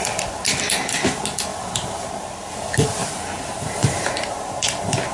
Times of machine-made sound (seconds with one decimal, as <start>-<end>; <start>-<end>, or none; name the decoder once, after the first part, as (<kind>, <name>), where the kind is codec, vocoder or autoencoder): 1.5-2.1 (vocoder, BigVGAN v2); 3.0-5.1